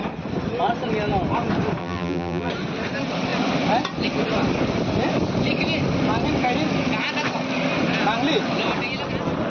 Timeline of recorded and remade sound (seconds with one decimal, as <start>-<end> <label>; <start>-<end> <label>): 0.0-1.8 recorded; 1.8-2.5 remade; 2.5-9.5 recorded